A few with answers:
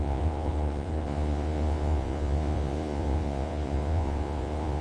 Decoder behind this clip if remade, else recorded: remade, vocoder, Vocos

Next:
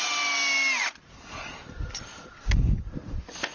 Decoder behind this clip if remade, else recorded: recorded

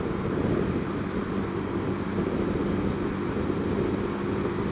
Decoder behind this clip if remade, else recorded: recorded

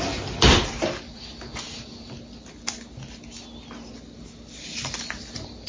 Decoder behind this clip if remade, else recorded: recorded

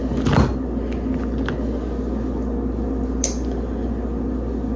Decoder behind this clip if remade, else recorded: recorded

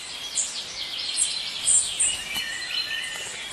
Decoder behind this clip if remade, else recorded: recorded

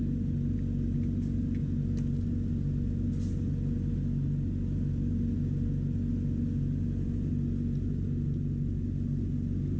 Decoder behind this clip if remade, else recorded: recorded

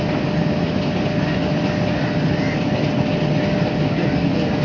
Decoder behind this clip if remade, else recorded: recorded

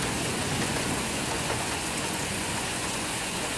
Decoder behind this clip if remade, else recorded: remade, vocoder, Vocos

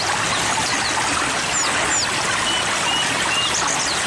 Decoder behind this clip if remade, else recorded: recorded